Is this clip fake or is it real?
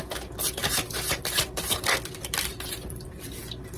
fake